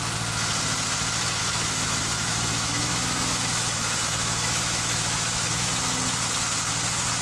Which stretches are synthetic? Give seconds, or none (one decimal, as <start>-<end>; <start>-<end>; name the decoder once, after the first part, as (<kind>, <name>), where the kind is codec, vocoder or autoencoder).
1.4-5.7 (autoencoder, DAC-VAE)